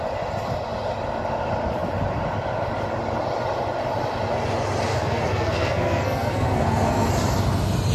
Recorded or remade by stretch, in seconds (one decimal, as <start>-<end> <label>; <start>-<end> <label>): 0.0-4.9 recorded; 4.9-7.1 remade; 7.1-7.9 recorded